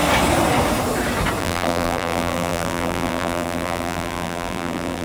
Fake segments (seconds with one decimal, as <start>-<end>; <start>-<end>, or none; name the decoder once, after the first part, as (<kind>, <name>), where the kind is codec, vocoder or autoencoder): 1.4-5.0 (vocoder, BigVGAN v2)